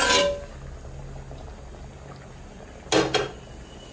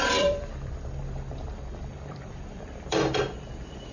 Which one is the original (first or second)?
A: first